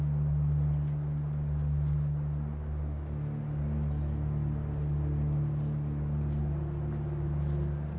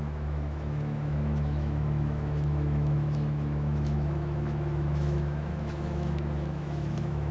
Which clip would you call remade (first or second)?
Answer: second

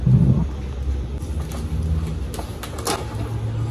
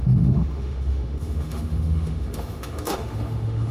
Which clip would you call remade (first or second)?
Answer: second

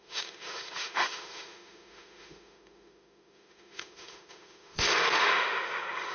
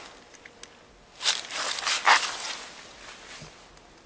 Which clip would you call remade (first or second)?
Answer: first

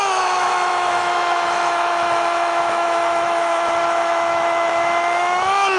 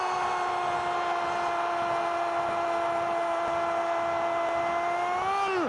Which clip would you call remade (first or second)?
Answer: first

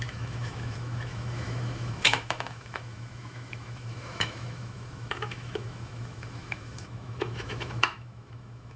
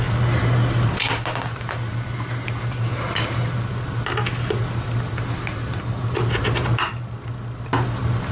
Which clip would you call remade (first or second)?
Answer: first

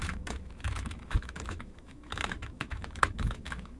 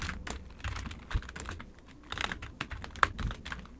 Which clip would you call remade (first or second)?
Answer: first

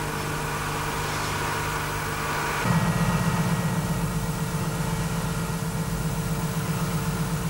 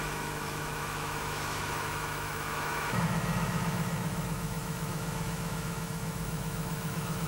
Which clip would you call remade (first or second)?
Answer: second